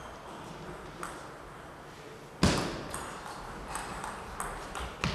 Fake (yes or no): no